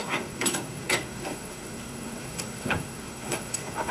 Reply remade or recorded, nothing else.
remade